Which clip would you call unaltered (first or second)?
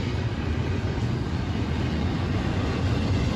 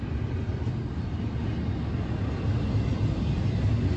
second